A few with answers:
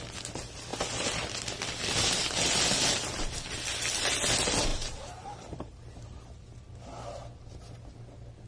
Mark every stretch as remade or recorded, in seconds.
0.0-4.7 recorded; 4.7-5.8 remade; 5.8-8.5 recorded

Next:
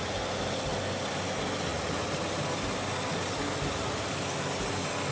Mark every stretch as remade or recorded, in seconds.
0.0-5.1 recorded

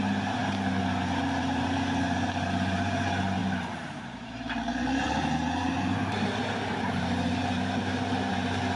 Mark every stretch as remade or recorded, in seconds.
0.0-0.4 remade; 0.4-1.4 recorded; 1.4-8.8 remade